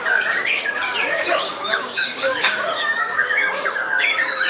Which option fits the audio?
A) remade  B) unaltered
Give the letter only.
A